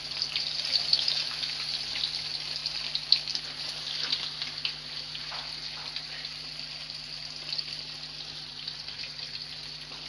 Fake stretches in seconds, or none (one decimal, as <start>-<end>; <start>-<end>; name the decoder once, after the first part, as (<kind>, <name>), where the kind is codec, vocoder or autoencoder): 0.9-1.5 (autoencoder, DAC-VAE)